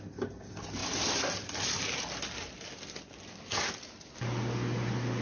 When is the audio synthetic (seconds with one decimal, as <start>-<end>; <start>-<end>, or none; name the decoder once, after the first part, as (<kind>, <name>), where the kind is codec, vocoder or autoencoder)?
none